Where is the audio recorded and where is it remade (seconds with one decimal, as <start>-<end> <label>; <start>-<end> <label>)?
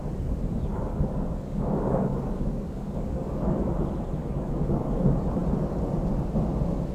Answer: 0.0-0.7 recorded; 0.7-3.7 remade; 3.7-4.2 recorded; 4.2-5.0 remade; 5.0-6.9 recorded